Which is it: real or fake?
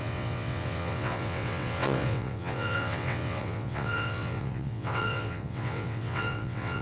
fake